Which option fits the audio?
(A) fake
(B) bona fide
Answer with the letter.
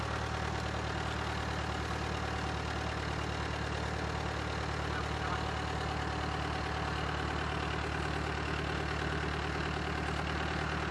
B